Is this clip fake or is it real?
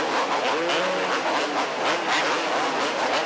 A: real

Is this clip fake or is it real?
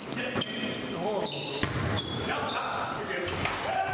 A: real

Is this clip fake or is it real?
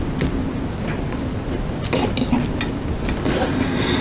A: real